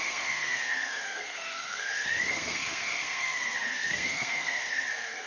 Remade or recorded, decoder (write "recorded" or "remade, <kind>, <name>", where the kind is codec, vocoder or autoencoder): remade, codec, SNAC